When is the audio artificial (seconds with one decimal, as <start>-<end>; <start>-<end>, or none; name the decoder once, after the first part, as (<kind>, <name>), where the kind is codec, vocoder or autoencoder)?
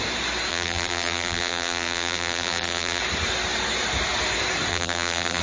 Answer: 0.5-3.0 (vocoder, BigVGAN v2); 4.7-5.4